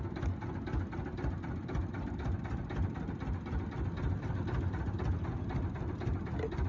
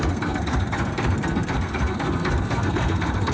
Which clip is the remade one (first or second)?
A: second